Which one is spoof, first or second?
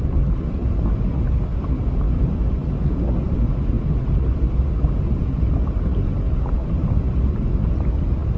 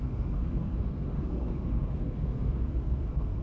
second